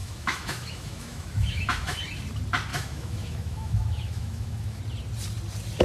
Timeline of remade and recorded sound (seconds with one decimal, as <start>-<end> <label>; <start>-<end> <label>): 0.0-2.0 remade; 2.0-2.7 recorded; 2.7-4.8 remade; 4.8-5.8 recorded